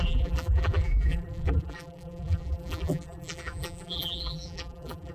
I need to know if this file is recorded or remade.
remade